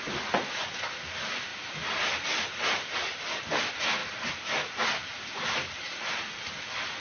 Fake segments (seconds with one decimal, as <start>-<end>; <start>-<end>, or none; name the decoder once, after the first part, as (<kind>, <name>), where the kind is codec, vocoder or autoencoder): 1.5-3.2 (vocoder, BigVGAN v2); 4.0-6.0